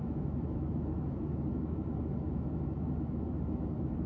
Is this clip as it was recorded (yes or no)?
no